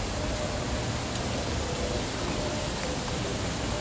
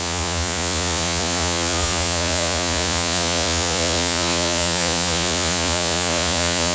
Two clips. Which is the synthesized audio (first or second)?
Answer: second